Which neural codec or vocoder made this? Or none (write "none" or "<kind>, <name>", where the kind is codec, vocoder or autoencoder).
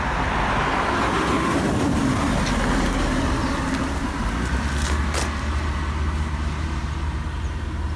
none